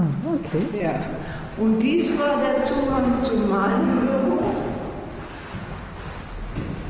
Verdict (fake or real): real